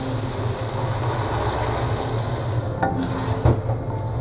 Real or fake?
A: real